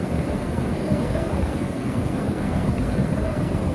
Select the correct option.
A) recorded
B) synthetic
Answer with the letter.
B